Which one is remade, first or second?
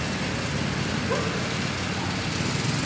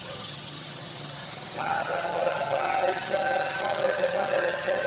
second